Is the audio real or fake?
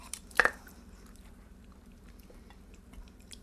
fake